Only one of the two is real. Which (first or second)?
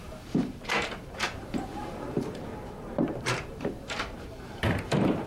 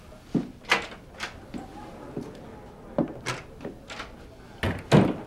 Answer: second